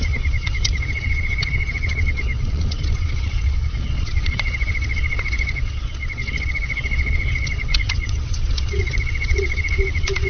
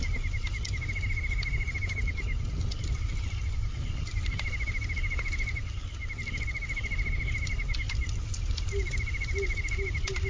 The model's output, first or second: first